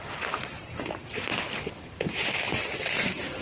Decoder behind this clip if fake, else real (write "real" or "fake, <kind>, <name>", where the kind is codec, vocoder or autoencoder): real